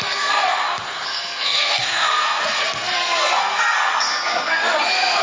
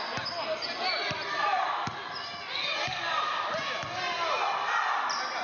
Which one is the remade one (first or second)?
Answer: first